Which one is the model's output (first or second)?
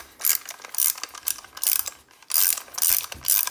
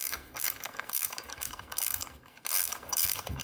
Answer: second